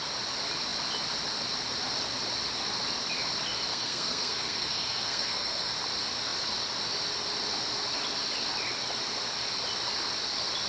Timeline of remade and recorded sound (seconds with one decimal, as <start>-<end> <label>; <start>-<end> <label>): 0.0-3.7 recorded; 3.7-5.7 remade; 5.7-10.7 recorded